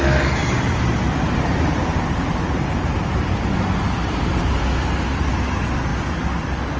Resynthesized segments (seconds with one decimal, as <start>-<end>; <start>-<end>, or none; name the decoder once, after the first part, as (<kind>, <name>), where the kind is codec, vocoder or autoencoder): 0.4-4.5 (vocoder, BigVGAN v2)